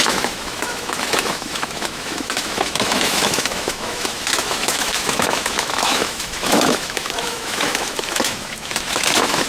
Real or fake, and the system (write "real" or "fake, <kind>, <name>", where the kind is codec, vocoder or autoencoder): fake, autoencoder, DAC-VAE